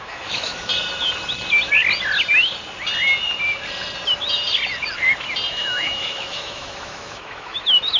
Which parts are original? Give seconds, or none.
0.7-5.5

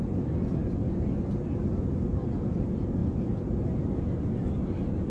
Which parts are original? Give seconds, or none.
0.0-5.1

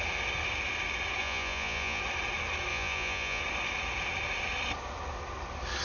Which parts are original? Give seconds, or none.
0.0-1.2; 2.0-2.7; 3.4-5.8

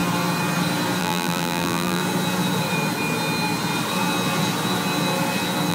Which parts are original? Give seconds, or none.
0.0-1.0; 2.0-5.7

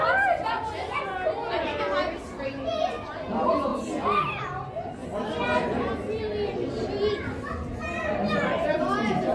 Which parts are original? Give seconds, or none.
0.0-9.3

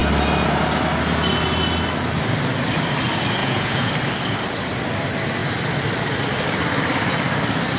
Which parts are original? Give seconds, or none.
0.0-3.4; 3.9-7.8